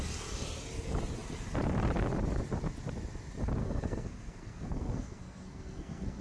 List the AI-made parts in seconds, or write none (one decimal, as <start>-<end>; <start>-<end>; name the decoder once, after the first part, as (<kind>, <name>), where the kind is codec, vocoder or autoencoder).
3.6-6.2 (codec, SNAC)

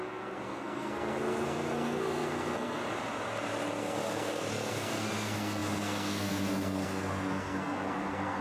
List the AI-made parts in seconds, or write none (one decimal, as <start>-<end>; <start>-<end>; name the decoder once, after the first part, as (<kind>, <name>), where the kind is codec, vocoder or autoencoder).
0.0-2.8 (codec, SNAC); 3.8-8.4

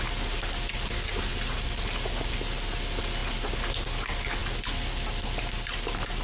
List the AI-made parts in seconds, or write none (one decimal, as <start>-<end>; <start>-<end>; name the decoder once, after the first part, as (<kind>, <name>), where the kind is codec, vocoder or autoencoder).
none

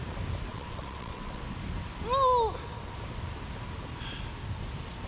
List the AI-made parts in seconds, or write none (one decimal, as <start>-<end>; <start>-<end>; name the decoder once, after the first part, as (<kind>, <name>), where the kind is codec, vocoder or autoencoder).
0.5-1.4 (vocoder, WaveNeXt)

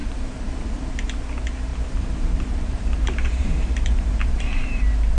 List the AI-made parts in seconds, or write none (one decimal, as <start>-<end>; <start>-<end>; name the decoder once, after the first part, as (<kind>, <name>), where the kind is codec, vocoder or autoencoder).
0.0-0.9 (vocoder, BigVGAN v2); 1.7-4.8

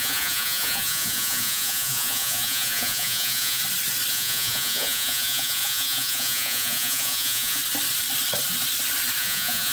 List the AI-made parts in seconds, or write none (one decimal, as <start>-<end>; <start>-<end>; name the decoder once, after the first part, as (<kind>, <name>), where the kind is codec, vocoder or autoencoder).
0.0-3.6 (vocoder, Vocos); 4.1-7.6; 9.2-9.7

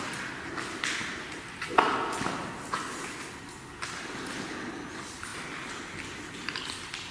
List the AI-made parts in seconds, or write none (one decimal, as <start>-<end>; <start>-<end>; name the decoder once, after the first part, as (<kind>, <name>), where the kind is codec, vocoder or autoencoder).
none